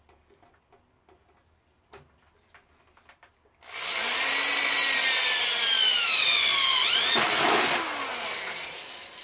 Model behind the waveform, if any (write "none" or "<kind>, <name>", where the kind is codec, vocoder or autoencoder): none